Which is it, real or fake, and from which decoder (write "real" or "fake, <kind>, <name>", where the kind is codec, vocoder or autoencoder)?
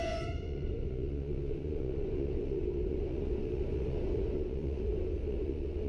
fake, vocoder, Vocos